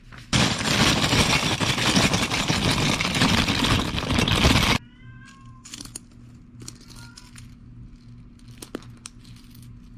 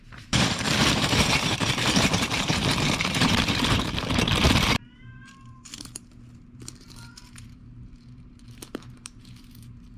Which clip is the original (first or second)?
first